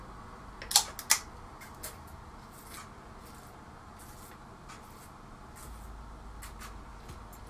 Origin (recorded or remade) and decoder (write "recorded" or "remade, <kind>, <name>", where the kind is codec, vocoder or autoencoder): recorded